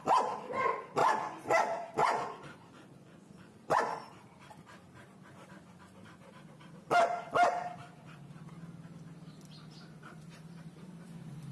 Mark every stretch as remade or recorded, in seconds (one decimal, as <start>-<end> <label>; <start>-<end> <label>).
0.0-1.0 recorded; 1.0-1.5 remade; 1.5-2.0 recorded; 2.0-3.8 remade; 3.8-11.5 recorded